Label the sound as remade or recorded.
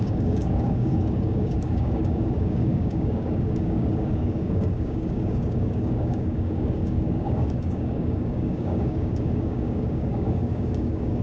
remade